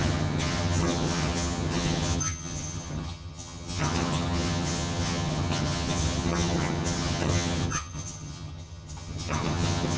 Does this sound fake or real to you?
fake